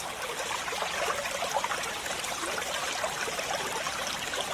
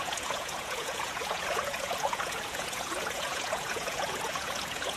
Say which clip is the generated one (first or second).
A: second